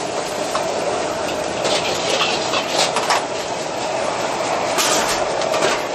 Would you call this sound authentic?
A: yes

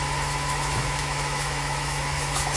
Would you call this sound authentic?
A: no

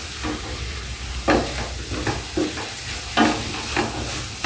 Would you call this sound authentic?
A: yes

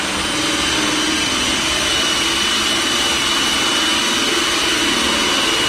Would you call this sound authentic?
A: yes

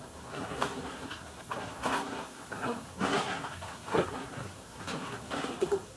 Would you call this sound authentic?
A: no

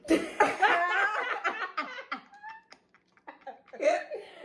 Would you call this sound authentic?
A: yes